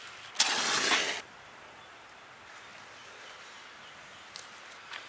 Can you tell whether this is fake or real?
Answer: real